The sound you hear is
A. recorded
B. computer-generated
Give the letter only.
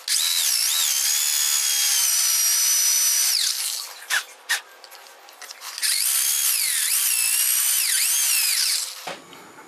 A